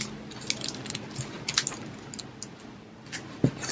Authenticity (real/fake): real